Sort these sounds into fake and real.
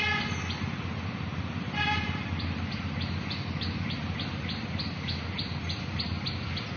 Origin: real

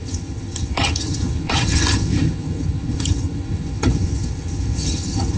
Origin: fake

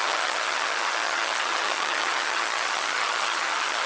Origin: fake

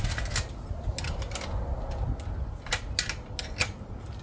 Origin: real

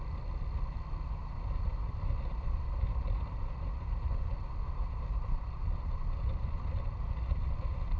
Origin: real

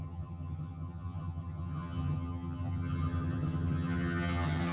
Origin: fake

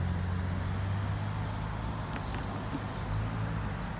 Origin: real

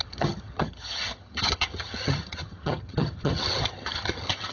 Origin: fake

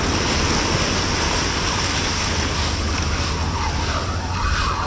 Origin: real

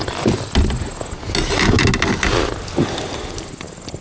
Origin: real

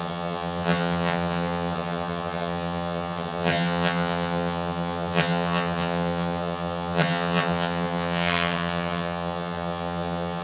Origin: fake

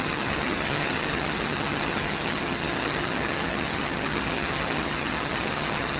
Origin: fake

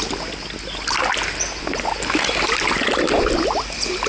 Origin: real